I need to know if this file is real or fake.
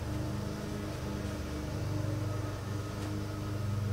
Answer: real